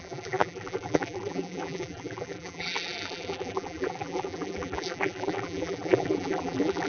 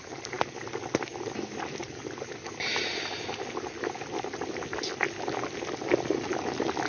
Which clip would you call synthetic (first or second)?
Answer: first